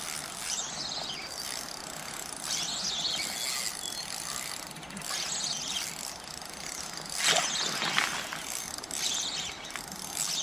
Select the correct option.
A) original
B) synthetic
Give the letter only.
A